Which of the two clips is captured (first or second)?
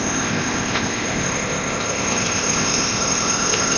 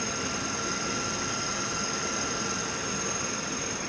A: second